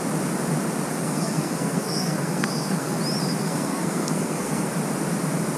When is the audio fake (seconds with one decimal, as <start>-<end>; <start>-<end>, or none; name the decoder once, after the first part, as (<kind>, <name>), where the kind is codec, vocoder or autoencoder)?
0.9-3.0 (codec, SNAC); 3.4-4.7